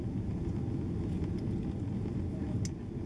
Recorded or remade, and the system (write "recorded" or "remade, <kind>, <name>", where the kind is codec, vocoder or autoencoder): recorded